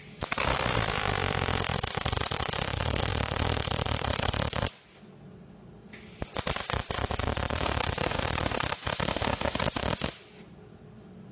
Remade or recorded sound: recorded